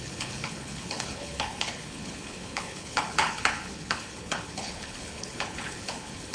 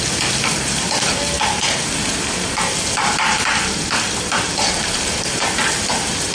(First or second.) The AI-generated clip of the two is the first